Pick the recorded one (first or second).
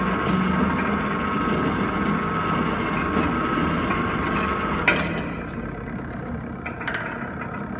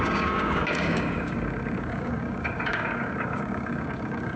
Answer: first